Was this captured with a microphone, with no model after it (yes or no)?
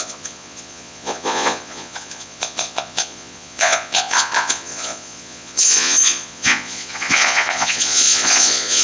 no